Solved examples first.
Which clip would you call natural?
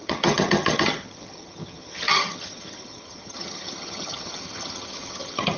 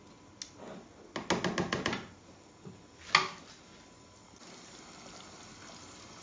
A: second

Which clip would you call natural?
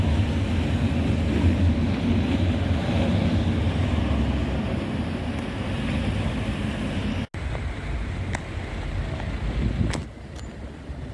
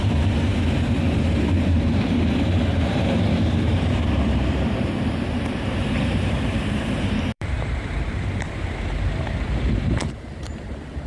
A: first